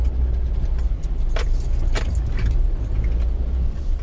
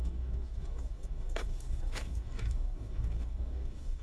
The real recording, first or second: first